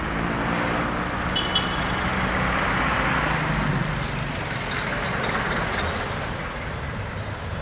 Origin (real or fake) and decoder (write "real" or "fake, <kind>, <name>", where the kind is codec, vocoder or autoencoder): real